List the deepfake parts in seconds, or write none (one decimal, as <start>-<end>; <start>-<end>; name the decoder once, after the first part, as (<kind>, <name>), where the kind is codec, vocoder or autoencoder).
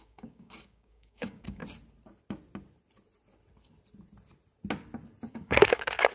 0.0-1.6 (codec, DAC); 5.3-6.1